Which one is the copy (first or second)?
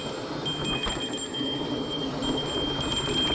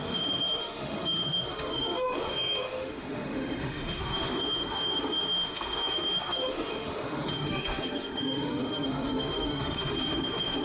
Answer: second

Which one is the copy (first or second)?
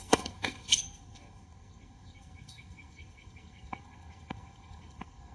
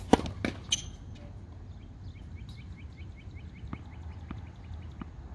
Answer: first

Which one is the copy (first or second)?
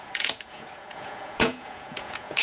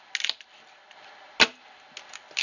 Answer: first